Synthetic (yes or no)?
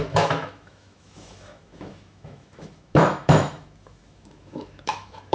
yes